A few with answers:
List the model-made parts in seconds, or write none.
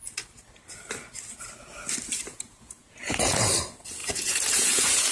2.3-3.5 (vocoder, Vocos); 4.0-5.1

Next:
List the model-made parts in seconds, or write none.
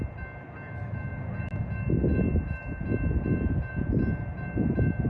none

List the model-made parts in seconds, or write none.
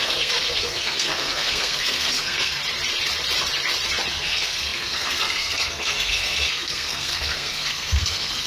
0.0-2.6 (codec, SNAC); 4.1-8.5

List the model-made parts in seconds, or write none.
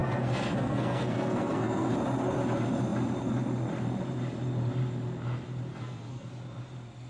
0.0-1.9 (codec, SNAC); 5.7-6.3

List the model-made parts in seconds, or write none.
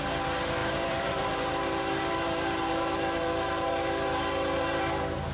0.6-3.8 (vocoder, BigVGAN v2)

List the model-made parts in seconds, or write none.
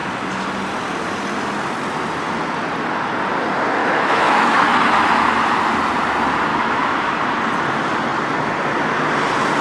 3.8-4.7 (autoencoder, DAC-VAE); 6.5-7.1